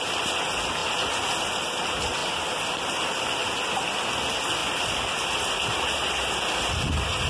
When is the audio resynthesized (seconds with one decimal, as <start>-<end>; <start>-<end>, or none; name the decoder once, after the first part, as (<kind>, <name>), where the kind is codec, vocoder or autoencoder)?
2.2-3.2 (vocoder, BigVGAN v2); 4.6-6.3